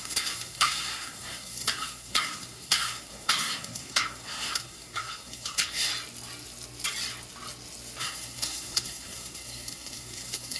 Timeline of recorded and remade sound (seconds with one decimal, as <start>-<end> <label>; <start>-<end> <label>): 0.0-5.9 remade; 5.9-8.0 recorded; 8.0-10.6 remade